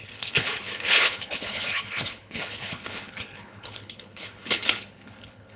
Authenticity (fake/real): fake